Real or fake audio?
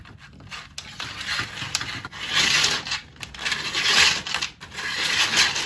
real